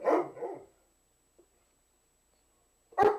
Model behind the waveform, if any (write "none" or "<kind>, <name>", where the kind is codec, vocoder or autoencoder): none